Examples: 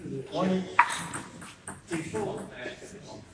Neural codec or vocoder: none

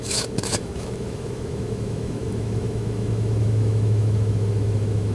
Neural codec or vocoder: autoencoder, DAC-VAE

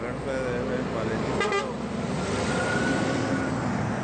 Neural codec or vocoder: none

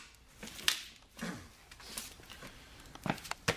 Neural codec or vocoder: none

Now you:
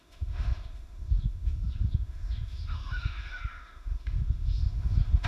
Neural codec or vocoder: autoencoder, DAC-VAE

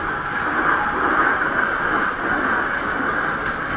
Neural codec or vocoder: none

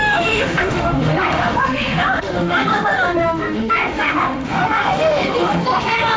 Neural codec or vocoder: autoencoder, DAC-VAE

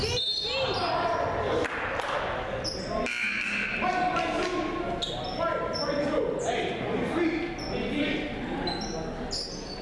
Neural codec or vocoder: none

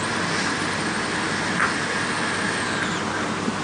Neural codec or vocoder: none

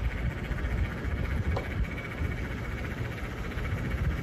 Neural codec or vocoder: none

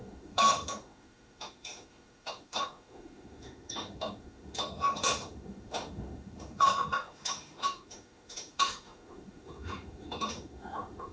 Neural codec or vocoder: autoencoder, DAC-VAE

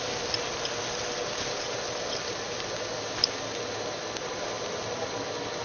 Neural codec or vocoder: none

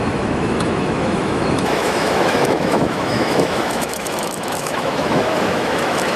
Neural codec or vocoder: autoencoder, DAC-VAE